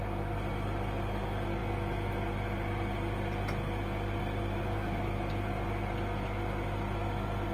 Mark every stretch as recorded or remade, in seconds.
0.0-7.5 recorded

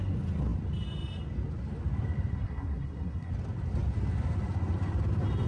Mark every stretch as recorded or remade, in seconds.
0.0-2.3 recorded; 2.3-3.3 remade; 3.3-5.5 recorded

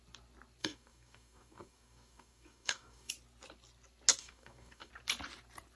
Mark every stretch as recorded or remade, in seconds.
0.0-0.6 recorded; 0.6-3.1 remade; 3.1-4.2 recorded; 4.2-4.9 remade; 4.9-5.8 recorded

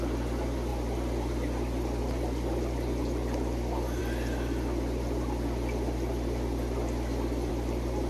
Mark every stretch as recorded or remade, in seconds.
0.0-8.1 recorded

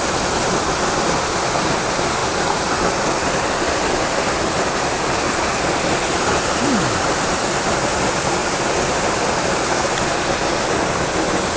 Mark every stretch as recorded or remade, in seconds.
0.0-11.6 recorded